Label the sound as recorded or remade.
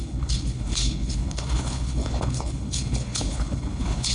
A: remade